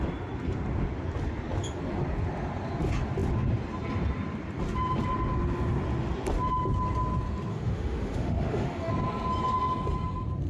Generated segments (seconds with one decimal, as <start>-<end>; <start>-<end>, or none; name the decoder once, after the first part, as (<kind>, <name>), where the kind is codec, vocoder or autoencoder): 7.5-8.9 (autoencoder, DAC-VAE)